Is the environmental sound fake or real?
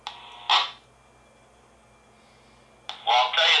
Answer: real